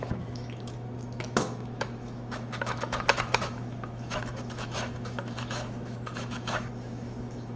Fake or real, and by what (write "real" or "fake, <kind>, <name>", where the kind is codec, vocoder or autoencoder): fake, autoencoder, DAC-VAE